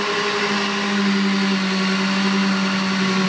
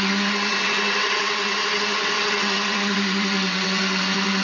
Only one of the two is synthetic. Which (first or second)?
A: second